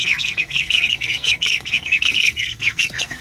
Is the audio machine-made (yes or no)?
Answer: yes